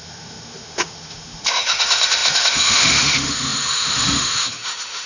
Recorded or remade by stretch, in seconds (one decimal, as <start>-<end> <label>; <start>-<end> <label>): 0.0-5.1 remade